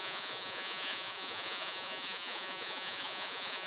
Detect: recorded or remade remade